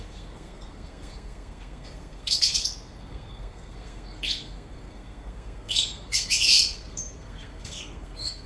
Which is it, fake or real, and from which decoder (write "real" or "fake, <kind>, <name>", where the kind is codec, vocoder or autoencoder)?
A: fake, codec, SNAC